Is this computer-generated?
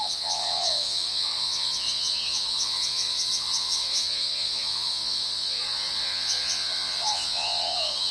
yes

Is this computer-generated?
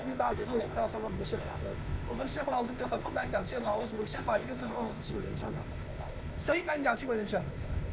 yes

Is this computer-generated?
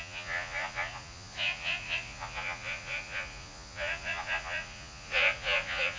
yes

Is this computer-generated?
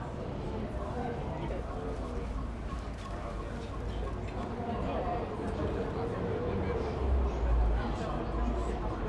no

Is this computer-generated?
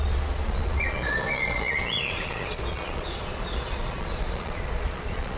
yes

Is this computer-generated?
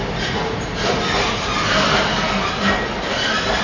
no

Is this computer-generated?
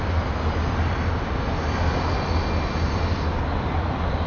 no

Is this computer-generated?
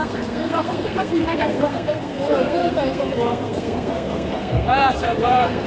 yes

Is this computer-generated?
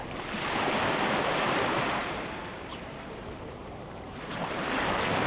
yes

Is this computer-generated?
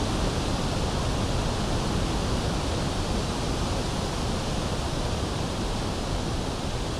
no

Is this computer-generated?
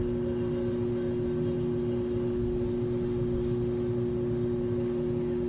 no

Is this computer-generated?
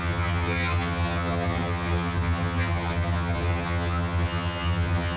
yes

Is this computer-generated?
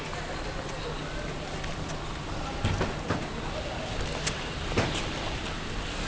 no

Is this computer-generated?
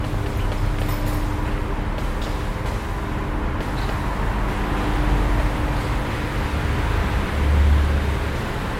no